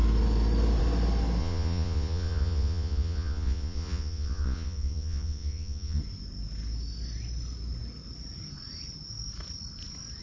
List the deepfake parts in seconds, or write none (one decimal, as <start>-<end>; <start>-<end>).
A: 1.4-6.0